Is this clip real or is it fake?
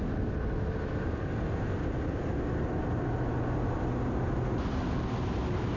real